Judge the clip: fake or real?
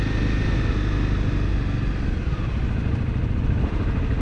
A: real